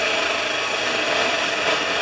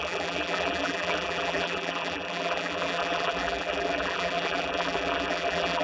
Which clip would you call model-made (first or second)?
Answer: second